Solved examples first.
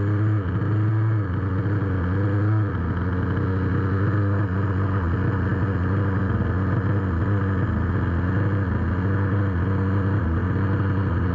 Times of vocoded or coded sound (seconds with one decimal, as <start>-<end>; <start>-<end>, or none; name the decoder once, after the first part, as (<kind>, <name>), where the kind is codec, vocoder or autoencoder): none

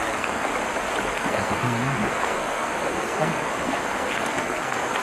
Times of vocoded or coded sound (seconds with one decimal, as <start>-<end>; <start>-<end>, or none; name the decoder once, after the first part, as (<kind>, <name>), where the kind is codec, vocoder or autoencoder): 0.0-0.5 (codec, SNAC); 1.0-5.0

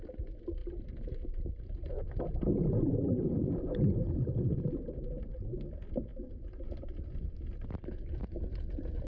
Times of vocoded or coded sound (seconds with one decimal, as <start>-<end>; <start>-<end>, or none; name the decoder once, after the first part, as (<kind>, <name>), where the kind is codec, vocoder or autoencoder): 0.0-9.1 (vocoder, BigVGAN v2)

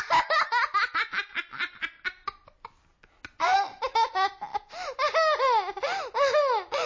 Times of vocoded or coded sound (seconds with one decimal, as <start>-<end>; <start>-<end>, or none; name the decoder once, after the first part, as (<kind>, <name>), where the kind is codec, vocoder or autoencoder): none

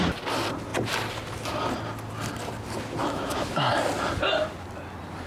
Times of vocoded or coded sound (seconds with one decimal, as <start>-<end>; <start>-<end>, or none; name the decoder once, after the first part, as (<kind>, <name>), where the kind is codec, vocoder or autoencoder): 3.0-3.7 (autoencoder, DAC-VAE)

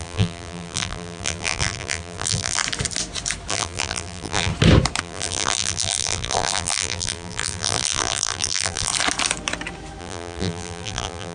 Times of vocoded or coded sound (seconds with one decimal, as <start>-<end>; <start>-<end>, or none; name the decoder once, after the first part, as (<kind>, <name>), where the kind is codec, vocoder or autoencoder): 0.0-2.6 (vocoder, BigVGAN v2); 3.5-4.5; 5.0-8.9; 10.0-11.3